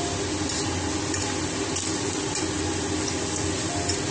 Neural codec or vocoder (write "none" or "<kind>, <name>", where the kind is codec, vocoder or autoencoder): none